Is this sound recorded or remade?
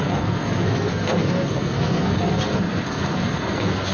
remade